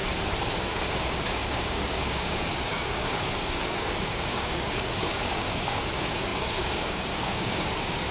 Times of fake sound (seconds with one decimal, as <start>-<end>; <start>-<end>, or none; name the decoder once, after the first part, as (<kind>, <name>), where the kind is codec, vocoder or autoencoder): 0.6-8.1 (codec, DAC)